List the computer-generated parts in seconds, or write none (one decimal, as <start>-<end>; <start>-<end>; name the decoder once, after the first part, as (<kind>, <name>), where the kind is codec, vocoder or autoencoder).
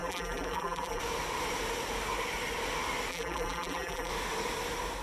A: 0.0-1.0 (vocoder, BigVGAN v2); 3.1-4.1